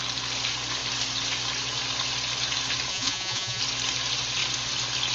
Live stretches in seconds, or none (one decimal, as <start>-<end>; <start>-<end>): 0.0-2.9; 3.6-5.1